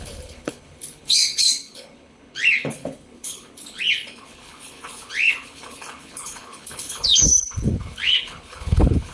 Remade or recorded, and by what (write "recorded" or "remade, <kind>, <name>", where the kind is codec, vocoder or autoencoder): remade, codec, HILCodec